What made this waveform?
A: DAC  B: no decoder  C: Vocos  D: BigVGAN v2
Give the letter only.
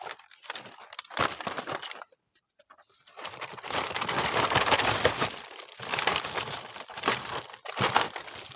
D